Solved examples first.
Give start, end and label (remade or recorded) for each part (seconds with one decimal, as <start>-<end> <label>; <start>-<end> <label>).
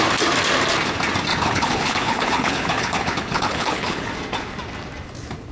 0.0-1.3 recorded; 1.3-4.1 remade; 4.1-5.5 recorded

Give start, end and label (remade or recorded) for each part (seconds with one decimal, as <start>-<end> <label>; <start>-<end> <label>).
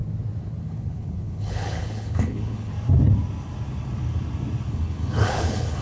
0.0-0.6 recorded; 0.6-2.7 remade; 2.7-4.7 recorded; 4.7-5.8 remade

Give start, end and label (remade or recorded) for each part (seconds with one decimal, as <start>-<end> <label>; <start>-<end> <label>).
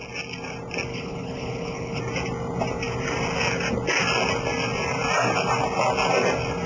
0.0-0.9 recorded; 0.9-2.0 remade; 2.0-6.7 recorded